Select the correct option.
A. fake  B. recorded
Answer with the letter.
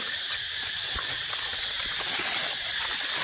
B